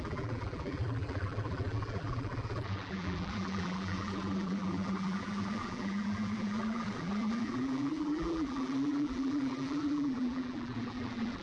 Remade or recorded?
remade